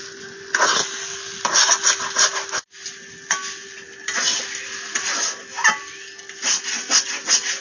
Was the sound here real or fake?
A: real